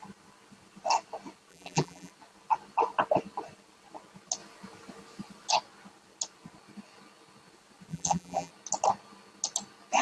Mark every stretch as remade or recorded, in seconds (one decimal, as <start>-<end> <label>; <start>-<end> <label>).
0.0-1.5 recorded; 1.5-2.1 remade; 2.1-7.9 recorded; 7.9-8.5 remade; 8.5-10.0 recorded